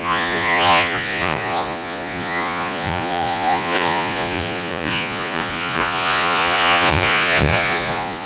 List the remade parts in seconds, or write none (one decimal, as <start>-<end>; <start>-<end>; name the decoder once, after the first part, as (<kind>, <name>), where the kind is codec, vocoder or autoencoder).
0.0-8.3 (vocoder, Vocos)